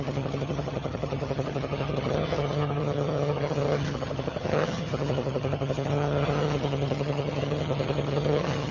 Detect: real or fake fake